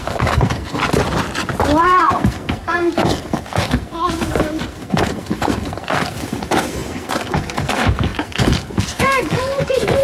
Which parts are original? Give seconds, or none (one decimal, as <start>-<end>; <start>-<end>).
0.8-1.8